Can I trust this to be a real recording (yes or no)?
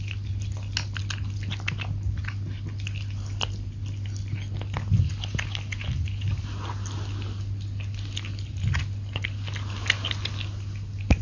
yes